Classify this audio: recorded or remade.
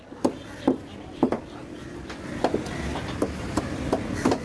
recorded